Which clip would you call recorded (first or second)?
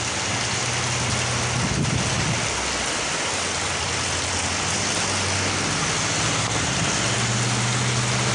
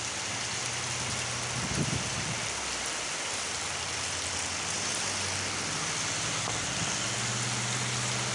first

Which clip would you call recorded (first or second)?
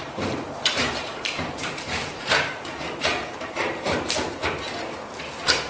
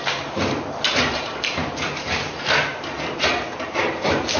second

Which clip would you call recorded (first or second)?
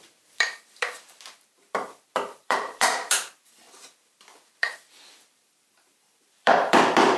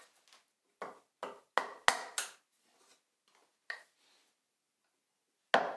second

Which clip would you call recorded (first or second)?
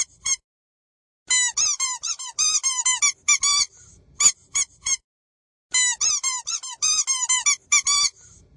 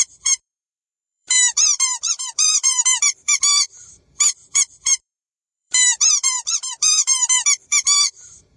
first